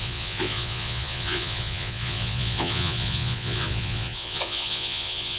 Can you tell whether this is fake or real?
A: fake